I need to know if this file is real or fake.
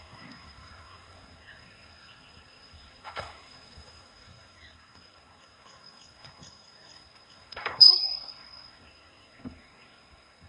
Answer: fake